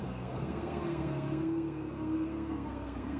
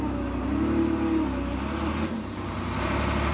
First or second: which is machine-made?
first